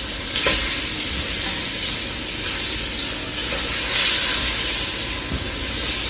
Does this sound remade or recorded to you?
recorded